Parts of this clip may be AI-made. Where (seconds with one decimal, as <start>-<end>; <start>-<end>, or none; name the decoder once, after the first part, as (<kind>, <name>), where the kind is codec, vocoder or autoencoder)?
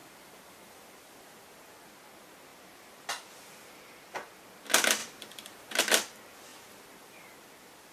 0.0-1.7 (vocoder, BigVGAN v2); 2.5-3.4; 5.0-5.8; 6.5-7.9